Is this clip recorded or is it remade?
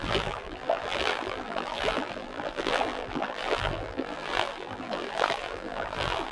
remade